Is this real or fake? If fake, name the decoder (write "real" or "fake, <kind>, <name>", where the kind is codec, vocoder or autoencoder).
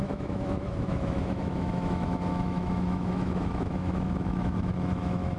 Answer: fake, autoencoder, DAC-VAE